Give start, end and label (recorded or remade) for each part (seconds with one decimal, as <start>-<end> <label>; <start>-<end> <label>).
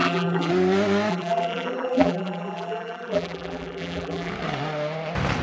0.0-0.5 remade; 0.5-1.1 recorded; 1.1-4.3 remade; 4.3-5.4 recorded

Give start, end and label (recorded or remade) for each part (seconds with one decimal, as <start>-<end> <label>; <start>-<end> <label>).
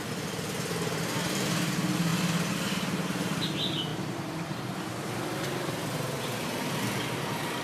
0.0-3.9 recorded; 3.9-4.6 remade; 4.6-7.6 recorded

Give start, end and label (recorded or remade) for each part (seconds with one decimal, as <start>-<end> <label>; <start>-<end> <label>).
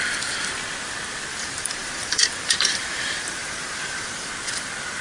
0.0-1.3 recorded; 1.3-4.3 remade; 4.3-5.0 recorded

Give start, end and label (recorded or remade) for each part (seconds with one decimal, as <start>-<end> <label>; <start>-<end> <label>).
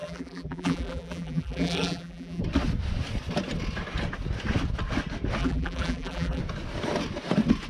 0.0-2.4 remade; 2.4-5.4 recorded; 5.4-6.4 remade; 6.4-7.7 recorded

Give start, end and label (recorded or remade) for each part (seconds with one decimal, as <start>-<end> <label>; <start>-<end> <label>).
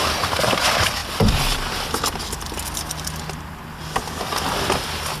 0.0-5.2 recorded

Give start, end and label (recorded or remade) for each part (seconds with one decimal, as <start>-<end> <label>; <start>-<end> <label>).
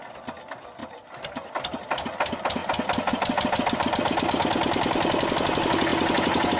0.0-0.8 recorded; 0.8-1.5 remade; 1.5-6.6 recorded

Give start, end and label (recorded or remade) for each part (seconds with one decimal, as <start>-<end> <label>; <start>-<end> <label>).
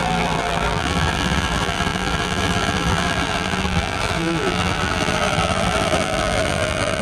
0.0-7.0 remade